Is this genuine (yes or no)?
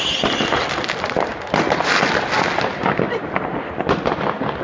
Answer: yes